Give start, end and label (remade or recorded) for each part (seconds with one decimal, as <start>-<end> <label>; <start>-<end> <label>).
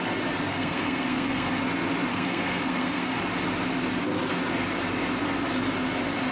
0.0-0.5 recorded; 0.5-1.6 remade; 1.6-2.1 recorded; 2.1-3.2 remade; 3.2-6.3 recorded